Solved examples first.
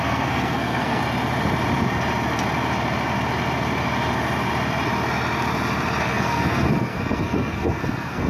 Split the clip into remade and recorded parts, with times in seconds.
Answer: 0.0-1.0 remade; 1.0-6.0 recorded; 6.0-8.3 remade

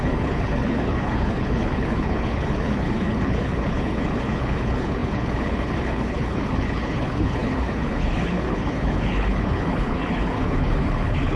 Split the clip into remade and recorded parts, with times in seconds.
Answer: 0.0-11.4 remade